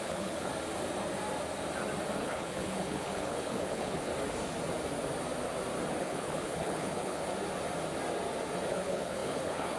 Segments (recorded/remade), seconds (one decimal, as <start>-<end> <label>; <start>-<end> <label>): 0.0-0.5 remade; 0.5-2.2 recorded; 2.2-4.1 remade; 4.1-6.0 recorded; 6.0-7.2 remade; 7.2-8.7 recorded; 8.7-9.8 remade